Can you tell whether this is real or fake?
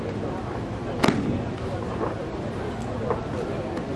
real